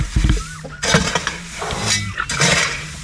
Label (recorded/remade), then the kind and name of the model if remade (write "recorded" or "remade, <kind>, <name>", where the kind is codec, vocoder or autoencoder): recorded